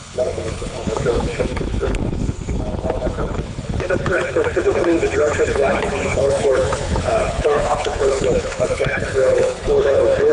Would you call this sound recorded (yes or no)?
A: no